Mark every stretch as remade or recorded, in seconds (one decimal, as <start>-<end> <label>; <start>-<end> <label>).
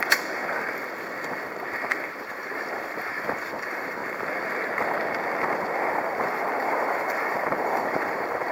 0.0-0.4 remade; 0.4-2.1 recorded; 2.1-4.0 remade; 4.0-5.9 recorded; 5.9-8.5 remade